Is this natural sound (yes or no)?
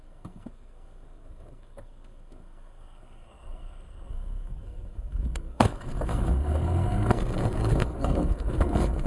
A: no